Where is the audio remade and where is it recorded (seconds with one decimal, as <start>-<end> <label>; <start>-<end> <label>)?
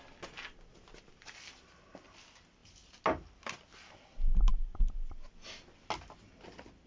0.0-6.9 recorded